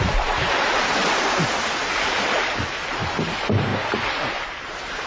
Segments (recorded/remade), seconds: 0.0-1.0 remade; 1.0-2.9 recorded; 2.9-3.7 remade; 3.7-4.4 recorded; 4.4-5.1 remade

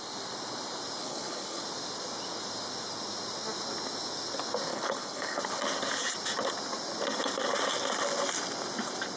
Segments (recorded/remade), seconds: 0.0-1.0 recorded; 1.0-1.6 remade; 1.6-4.7 recorded; 4.7-5.4 remade; 5.4-9.2 recorded

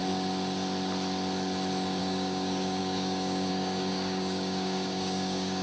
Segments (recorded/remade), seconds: 0.0-2.0 recorded; 2.0-5.6 remade

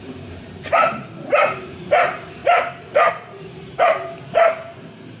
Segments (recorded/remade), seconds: 0.0-4.4 remade; 4.4-5.2 recorded

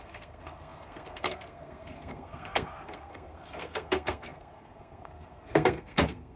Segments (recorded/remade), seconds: 0.0-6.4 remade

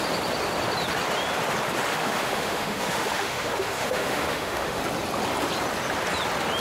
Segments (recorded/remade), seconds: 0.0-1.9 recorded; 1.9-4.8 remade; 4.8-6.6 recorded